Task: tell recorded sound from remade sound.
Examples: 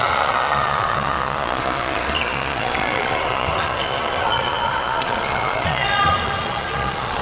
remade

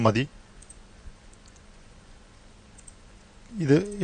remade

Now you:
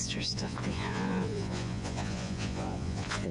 remade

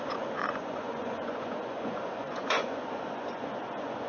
remade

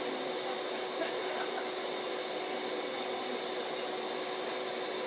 recorded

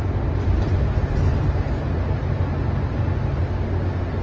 recorded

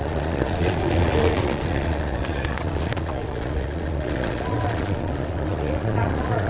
remade